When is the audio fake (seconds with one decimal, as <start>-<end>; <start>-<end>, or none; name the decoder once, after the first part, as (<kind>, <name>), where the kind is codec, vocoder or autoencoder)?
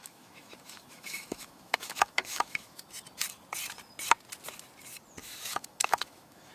0.0-2.8 (autoencoder, DAC-VAE); 5.2-6.5